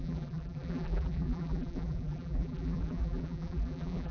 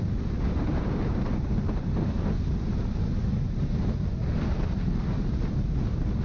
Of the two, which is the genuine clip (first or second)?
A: second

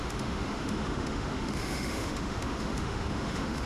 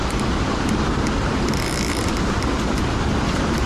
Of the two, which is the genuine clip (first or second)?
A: second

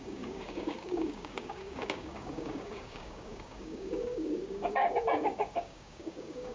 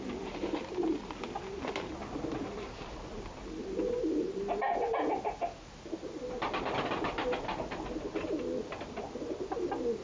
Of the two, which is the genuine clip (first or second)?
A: second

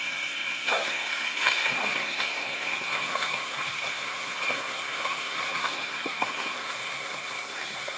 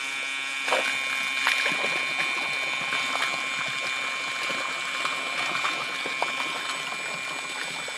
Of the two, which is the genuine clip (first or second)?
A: second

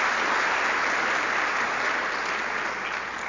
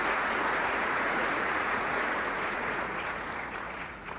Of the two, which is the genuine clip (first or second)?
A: first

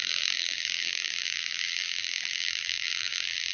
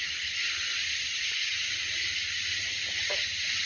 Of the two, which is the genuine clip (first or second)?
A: second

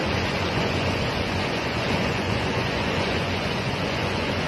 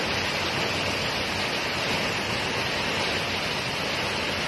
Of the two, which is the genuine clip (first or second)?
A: second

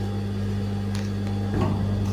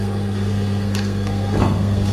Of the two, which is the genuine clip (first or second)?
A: first